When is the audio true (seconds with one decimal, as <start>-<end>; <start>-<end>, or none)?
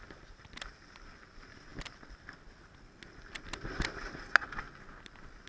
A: 0.0-5.5